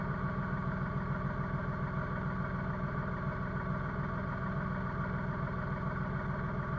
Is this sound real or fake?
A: real